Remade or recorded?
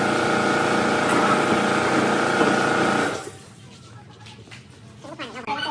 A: recorded